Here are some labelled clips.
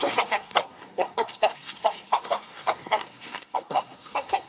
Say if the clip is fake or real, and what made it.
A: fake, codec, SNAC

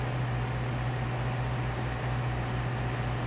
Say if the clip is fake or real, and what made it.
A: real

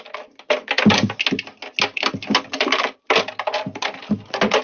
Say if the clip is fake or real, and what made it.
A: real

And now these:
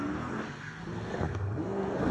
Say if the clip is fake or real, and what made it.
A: fake, codec, SNAC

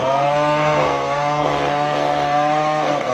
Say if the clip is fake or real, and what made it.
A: fake, codec, SNAC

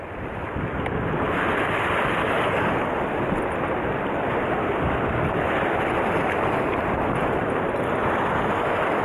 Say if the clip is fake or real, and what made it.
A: real